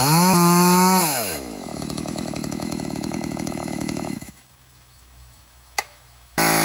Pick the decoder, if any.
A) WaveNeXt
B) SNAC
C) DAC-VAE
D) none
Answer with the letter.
C